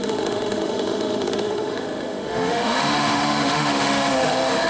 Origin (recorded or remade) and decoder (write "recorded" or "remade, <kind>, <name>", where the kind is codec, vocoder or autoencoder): remade, autoencoder, DAC-VAE